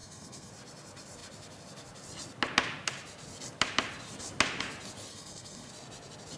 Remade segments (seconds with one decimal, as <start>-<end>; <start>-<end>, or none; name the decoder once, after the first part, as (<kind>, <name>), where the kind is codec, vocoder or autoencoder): 0.0-0.5 (codec, SNAC); 5.1-5.7